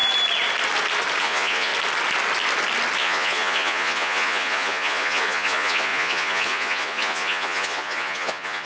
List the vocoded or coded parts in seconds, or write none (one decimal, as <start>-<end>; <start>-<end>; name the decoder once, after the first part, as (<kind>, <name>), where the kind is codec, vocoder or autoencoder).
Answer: 1.2-1.7 (vocoder, Vocos); 3.0-8.7